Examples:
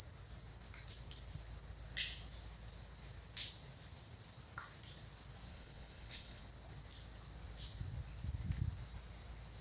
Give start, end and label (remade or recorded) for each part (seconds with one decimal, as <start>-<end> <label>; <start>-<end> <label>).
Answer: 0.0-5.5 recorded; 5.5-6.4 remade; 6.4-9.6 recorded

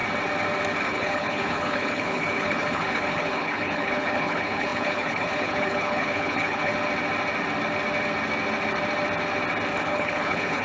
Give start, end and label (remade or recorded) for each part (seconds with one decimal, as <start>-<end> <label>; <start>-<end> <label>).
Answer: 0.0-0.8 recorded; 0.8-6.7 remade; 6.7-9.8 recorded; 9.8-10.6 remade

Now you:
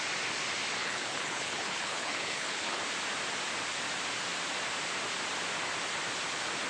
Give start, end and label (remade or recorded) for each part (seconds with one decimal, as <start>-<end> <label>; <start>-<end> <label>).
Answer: 0.0-0.8 recorded; 0.8-2.8 remade; 2.8-6.7 recorded